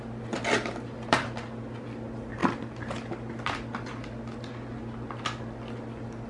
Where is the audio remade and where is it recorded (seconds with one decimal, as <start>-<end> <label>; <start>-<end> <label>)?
0.0-6.3 recorded